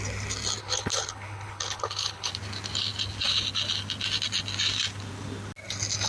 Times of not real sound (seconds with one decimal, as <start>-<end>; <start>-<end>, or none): 0.6-2.3